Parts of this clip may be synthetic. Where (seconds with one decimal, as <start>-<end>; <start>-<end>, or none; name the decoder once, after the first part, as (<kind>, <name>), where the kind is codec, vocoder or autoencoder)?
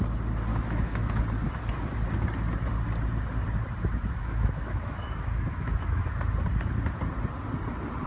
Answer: 0.5-1.2 (autoencoder, DAC-VAE); 4.2-6.1